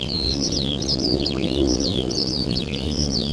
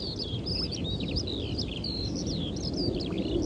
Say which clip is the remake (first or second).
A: first